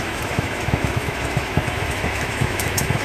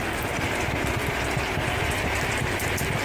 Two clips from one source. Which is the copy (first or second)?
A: first